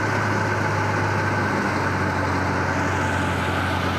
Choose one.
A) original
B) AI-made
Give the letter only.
A